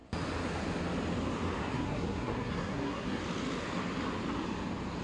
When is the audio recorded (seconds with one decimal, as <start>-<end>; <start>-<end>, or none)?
0.0-1.6; 3.2-5.0